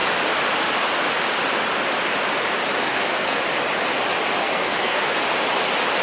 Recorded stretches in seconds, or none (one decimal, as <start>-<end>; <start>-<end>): 0.0-2.8; 3.4-4.4; 5.2-6.0